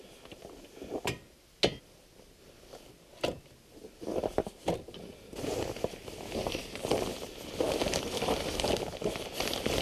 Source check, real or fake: real